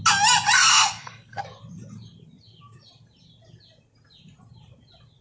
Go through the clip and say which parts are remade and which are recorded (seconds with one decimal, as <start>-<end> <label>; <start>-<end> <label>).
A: 0.0-0.7 recorded; 0.7-1.4 remade; 1.4-5.2 recorded